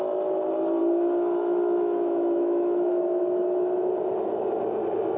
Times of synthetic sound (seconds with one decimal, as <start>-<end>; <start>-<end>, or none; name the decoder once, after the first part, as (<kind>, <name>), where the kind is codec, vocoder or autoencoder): 0.8-3.9 (autoencoder, DAC-VAE)